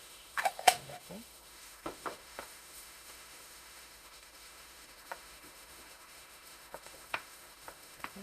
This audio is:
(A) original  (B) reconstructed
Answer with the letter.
B